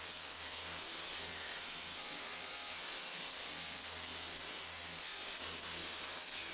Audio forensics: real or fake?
fake